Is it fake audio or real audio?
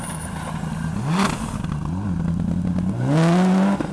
real